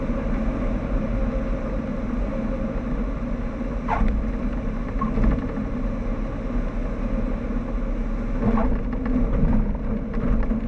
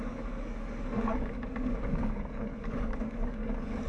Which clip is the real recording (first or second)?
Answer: first